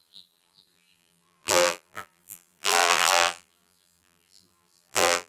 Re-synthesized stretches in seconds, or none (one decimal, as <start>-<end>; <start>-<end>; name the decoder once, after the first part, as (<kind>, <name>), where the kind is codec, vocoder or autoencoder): 0.0-5.3 (vocoder, BigVGAN v2)